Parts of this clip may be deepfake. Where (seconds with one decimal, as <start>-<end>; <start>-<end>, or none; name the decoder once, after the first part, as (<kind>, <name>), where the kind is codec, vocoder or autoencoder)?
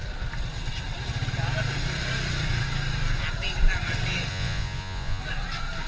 4.3-5.2 (vocoder, Vocos)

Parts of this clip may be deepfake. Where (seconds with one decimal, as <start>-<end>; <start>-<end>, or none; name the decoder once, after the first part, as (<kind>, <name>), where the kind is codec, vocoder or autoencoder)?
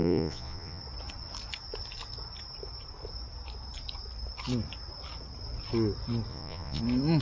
0.0-0.8 (vocoder, Vocos); 6.3-6.8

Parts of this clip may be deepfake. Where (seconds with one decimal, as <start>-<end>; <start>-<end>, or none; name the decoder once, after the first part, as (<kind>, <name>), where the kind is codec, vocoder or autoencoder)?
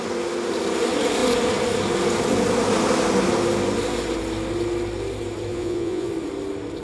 5.5-6.1 (vocoder, Vocos)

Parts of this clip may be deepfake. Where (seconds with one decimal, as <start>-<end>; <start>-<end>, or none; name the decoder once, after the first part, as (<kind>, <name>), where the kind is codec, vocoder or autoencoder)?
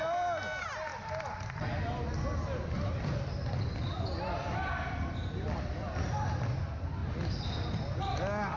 none